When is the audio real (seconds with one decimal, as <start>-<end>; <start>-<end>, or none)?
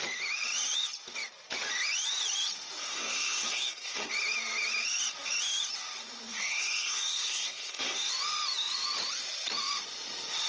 0.0-2.9; 4.1-6.3; 8.1-10.5